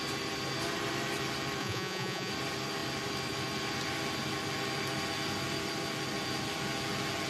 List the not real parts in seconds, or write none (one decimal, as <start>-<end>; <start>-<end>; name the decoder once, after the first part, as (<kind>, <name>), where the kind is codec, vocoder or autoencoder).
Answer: 1.6-2.3 (vocoder, Vocos)